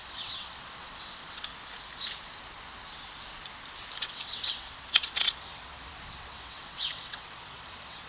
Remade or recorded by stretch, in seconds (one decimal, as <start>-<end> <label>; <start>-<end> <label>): 0.0-1.5 remade; 1.5-4.0 recorded; 4.0-8.1 remade